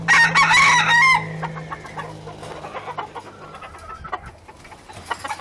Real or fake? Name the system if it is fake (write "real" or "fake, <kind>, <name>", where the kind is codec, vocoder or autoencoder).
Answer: real